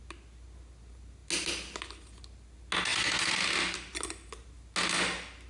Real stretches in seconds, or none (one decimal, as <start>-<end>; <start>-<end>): 0.0-5.5